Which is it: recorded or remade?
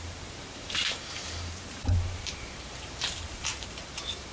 remade